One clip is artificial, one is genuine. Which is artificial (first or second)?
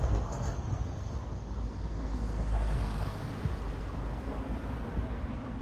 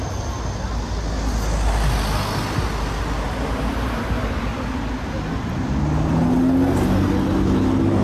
first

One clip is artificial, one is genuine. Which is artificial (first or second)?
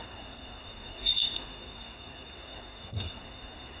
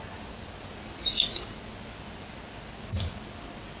first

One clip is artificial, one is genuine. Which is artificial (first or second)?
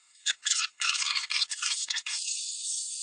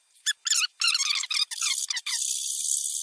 first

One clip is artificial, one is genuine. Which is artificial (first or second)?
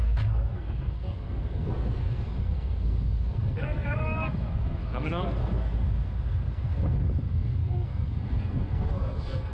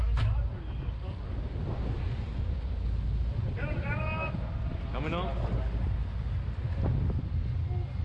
first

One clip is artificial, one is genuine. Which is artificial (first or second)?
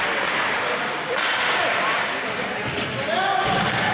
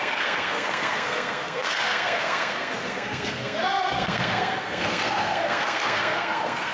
second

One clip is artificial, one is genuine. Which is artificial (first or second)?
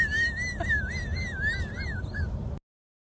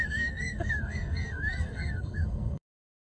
second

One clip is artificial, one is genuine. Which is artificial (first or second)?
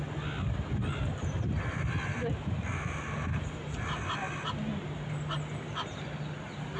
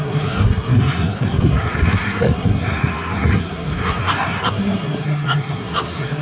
second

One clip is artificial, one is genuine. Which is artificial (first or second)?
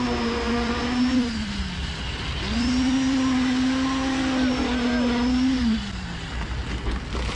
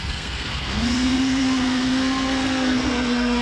second